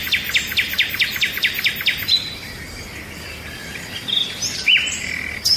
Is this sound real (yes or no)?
no